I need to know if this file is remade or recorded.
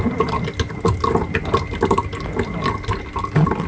recorded